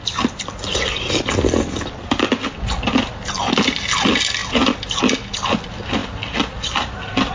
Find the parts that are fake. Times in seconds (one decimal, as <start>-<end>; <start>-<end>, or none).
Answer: none